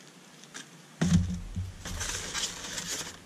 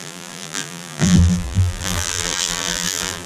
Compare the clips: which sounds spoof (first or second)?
second